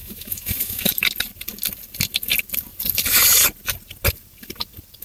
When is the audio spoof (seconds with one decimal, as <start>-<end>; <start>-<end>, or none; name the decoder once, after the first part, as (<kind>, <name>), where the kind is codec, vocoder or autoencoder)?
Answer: 0.0-1.0 (autoencoder, DAC-VAE)